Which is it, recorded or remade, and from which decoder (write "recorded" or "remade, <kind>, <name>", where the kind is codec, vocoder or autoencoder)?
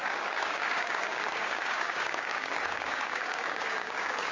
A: remade, codec, DAC